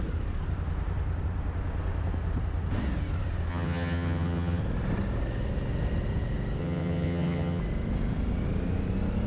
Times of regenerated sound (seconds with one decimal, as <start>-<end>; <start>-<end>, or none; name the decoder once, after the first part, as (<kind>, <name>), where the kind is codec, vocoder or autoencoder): 3.5-4.6 (vocoder, HiFi-GAN); 6.6-7.6